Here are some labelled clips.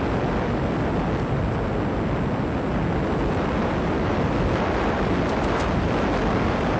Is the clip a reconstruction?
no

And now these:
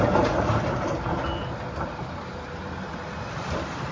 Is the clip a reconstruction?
no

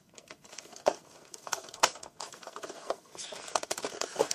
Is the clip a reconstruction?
yes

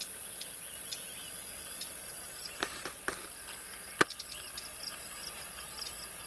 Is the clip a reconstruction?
no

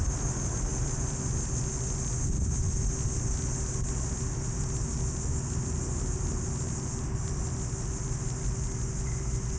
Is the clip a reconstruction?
no